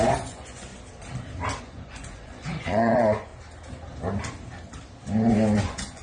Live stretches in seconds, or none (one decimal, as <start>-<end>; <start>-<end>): 0.7-1.6; 3.3-5.6